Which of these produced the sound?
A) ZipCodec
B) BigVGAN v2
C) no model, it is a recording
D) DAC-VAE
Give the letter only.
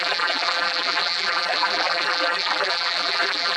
B